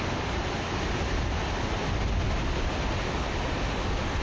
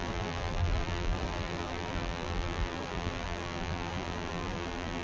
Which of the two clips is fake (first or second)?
second